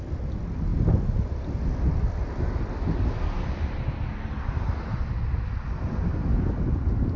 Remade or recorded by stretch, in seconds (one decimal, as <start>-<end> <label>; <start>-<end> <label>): 0.0-7.2 recorded